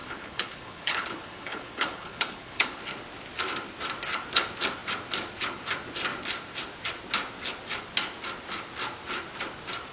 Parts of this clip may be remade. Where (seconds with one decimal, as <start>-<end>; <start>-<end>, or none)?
0.0-2.8